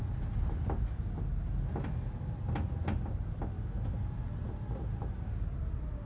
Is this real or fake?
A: real